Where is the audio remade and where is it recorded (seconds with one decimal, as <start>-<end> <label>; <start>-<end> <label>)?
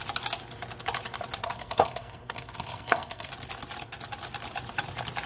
0.0-1.4 recorded; 1.4-3.3 remade; 3.3-5.3 recorded